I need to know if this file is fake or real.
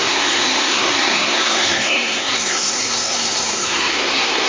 fake